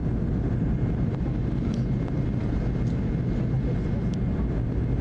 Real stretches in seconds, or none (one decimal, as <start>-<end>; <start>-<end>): 0.0-5.0